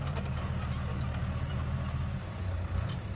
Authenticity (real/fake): fake